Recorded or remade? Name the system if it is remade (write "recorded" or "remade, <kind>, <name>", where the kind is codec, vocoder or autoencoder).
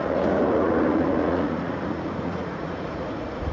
remade, vocoder, Vocos